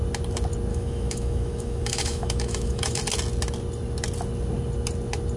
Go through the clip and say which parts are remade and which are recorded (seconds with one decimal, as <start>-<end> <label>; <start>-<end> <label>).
0.0-0.7 recorded; 0.7-3.0 remade; 3.0-5.4 recorded